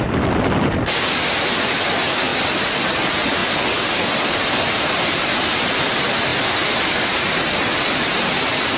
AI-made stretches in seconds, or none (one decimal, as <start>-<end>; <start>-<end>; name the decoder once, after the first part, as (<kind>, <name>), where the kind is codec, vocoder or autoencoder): 0.0-8.8 (vocoder, BigVGAN v2)